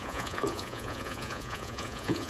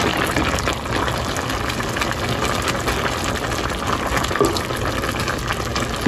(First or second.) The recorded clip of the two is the second